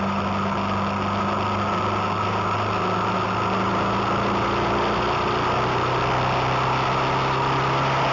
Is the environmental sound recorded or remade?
recorded